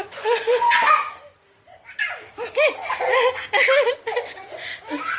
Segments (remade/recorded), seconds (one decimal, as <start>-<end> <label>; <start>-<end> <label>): 0.0-0.8 remade; 0.8-3.9 recorded; 3.9-4.7 remade; 4.7-5.2 recorded